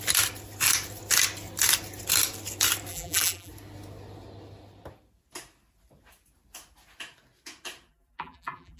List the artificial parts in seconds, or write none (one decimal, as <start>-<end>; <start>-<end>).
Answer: 2.9-3.5; 7.9-8.8